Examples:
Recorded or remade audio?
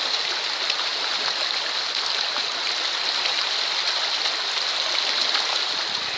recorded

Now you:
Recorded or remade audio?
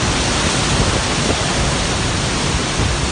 recorded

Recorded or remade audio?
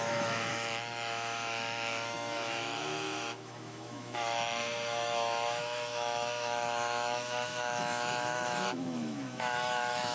remade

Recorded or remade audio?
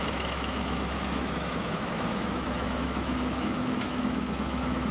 remade